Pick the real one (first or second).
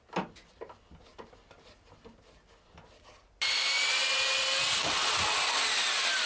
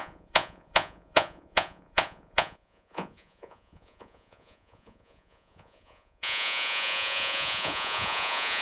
first